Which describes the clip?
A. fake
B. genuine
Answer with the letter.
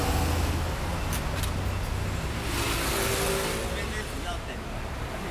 B